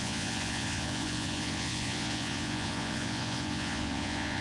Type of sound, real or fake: fake